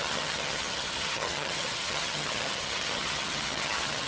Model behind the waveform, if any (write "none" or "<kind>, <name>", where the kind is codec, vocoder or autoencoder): vocoder, HiFi-GAN